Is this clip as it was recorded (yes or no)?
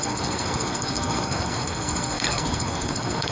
no